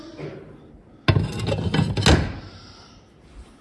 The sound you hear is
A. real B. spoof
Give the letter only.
A